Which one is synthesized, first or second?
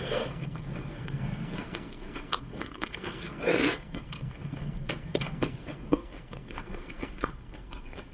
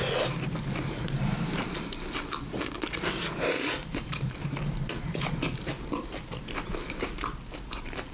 first